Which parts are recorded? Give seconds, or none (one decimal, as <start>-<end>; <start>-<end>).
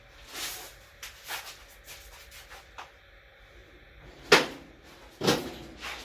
0.0-6.0